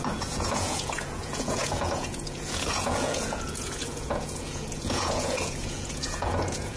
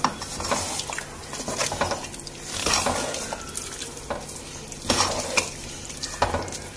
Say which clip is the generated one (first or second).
first